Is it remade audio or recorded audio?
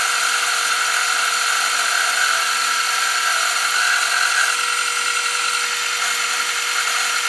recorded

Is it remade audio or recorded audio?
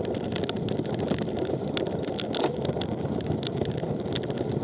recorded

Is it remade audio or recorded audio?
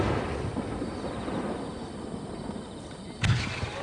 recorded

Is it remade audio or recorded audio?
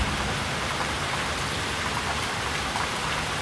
recorded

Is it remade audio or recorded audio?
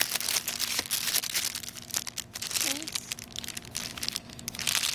recorded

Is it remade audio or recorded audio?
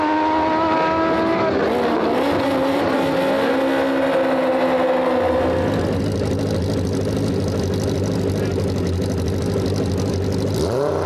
recorded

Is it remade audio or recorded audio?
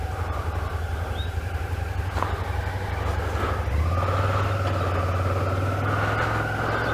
recorded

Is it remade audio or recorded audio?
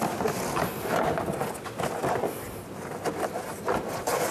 recorded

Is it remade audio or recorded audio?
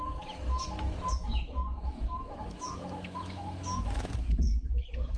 remade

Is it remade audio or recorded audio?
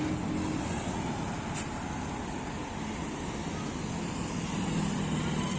recorded